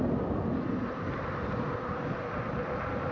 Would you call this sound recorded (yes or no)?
yes